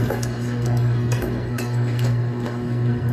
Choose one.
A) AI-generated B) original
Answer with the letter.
A